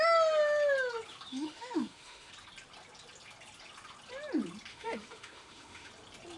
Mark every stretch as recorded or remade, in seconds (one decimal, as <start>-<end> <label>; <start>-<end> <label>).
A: 0.0-1.3 recorded; 1.3-2.3 remade; 2.3-4.7 recorded; 4.7-5.9 remade; 5.9-6.4 recorded